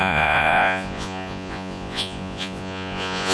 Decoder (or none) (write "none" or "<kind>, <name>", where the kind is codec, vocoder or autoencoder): vocoder, Vocos